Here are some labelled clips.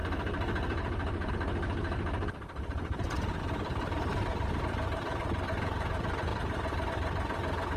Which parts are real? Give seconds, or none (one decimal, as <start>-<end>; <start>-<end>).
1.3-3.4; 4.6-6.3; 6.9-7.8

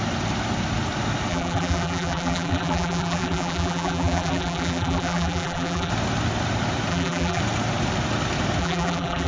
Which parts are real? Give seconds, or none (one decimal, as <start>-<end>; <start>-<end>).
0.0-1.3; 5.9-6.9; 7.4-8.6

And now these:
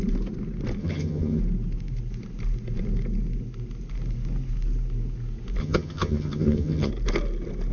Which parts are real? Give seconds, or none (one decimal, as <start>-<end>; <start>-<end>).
0.0-0.8; 1.4-5.6; 6.9-7.7

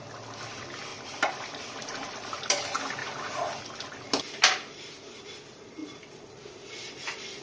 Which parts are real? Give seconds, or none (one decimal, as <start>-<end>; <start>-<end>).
0.0-0.9; 2.6-3.0; 3.6-5.8

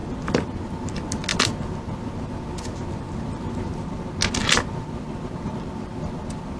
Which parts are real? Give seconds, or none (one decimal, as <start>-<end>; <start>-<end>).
0.0-6.6

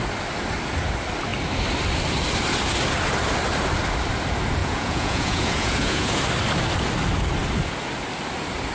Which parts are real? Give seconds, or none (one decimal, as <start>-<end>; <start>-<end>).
0.0-4.6; 6.2-8.7